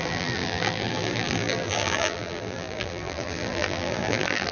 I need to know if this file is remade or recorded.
remade